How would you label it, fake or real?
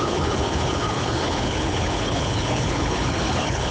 fake